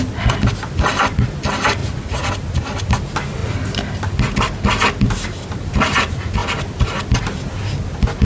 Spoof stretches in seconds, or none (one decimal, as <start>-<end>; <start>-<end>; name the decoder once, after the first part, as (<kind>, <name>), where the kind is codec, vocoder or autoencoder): 1.8-2.3 (vocoder, Vocos)